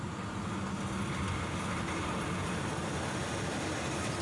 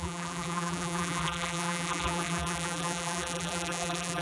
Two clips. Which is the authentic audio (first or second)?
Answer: first